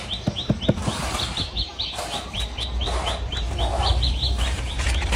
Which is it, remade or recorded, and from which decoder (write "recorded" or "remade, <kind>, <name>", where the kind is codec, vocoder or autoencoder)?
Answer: remade, vocoder, BigVGAN v2